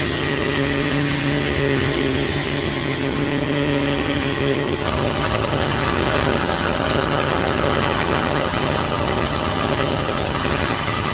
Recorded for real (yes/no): no